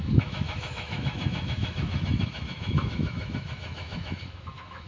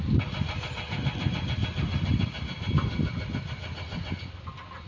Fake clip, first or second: first